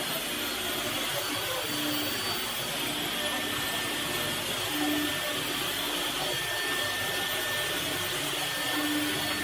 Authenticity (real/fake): real